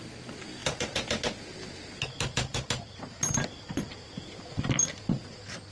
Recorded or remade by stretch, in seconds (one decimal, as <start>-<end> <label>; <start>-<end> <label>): 0.0-5.7 recorded